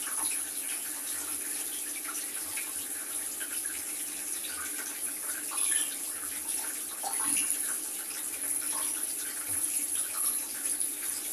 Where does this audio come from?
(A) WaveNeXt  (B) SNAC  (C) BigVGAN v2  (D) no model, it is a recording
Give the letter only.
C